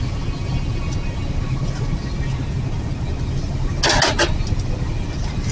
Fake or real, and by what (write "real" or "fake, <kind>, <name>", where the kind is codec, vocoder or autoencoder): real